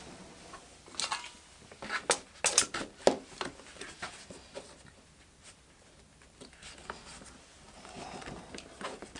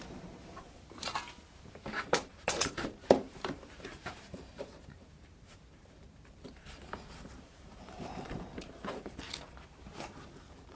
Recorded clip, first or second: first